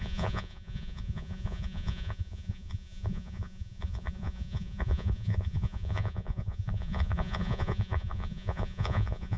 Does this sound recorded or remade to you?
remade